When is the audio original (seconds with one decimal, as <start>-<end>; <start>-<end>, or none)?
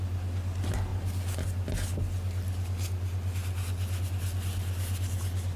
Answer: 0.0-5.6